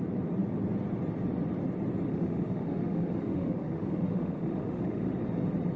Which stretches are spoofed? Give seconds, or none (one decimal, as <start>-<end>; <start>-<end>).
2.1-5.2